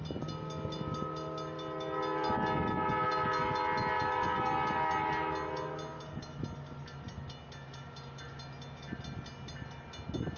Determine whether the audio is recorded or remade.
recorded